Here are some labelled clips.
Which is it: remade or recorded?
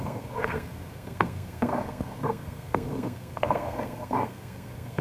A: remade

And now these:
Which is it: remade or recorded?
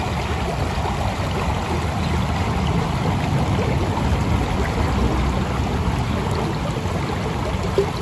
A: recorded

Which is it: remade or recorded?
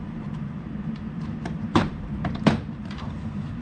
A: remade